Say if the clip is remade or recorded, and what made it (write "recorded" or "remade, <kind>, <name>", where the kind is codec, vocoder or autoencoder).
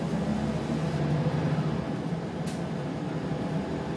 recorded